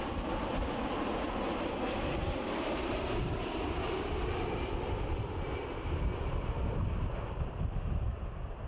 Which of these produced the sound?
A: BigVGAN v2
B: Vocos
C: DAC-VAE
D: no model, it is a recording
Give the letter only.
D